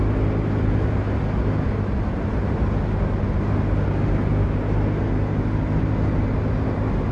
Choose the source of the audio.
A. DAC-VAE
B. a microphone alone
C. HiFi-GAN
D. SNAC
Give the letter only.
B